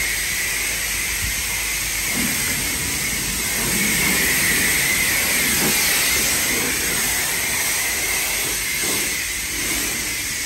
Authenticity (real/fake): real